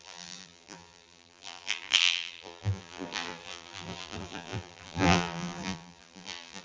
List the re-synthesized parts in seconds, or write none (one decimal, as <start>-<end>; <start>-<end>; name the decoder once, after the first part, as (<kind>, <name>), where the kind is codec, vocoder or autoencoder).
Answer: 0.0-6.6 (vocoder, BigVGAN v2)